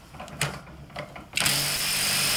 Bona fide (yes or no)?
yes